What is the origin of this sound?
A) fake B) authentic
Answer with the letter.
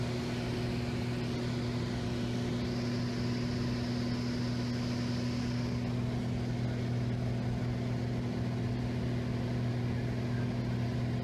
B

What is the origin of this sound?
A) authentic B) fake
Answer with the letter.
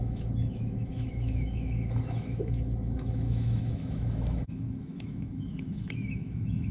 B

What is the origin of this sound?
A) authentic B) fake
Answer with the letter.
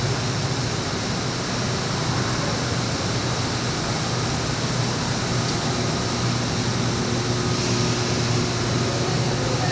A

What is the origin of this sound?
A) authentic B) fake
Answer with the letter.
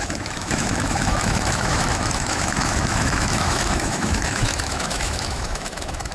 B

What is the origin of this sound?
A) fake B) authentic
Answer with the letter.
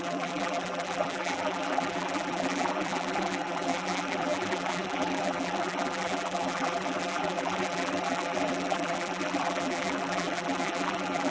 A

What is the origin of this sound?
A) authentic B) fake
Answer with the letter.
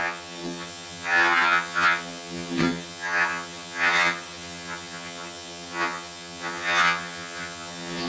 B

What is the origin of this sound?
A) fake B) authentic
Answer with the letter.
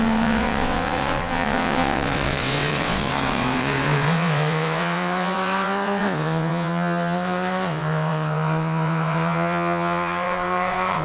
A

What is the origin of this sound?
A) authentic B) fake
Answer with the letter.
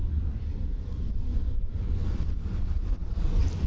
B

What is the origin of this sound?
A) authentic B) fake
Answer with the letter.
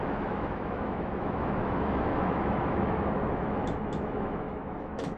B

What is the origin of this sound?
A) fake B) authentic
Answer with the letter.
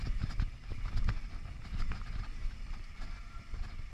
B